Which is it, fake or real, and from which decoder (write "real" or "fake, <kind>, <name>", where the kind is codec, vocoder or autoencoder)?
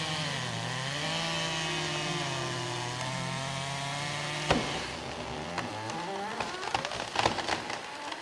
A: real